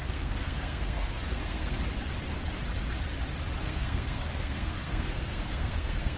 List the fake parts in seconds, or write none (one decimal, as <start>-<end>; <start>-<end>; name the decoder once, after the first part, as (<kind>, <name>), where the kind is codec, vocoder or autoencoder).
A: 0.0-1.8 (codec, SNAC); 3.6-6.2